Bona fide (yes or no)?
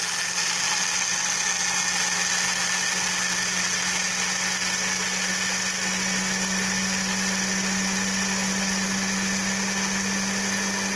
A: yes